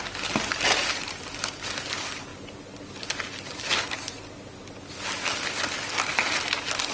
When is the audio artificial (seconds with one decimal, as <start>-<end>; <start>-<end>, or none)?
none